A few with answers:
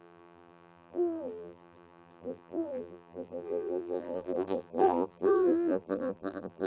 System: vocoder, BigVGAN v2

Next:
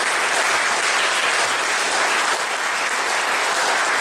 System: none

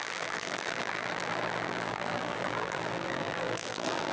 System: vocoder, BigVGAN v2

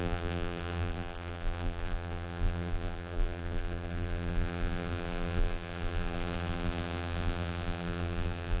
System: vocoder, BigVGAN v2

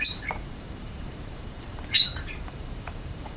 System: vocoder, BigVGAN v2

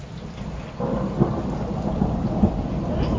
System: none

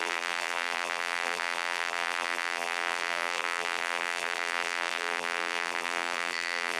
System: vocoder, BigVGAN v2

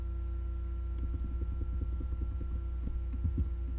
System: none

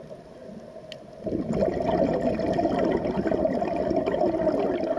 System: none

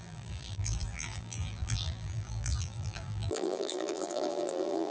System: vocoder, BigVGAN v2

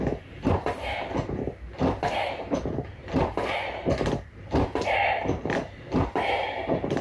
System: vocoder, BigVGAN v2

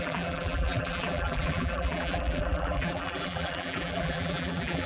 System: vocoder, BigVGAN v2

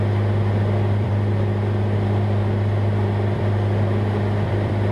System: vocoder, BigVGAN v2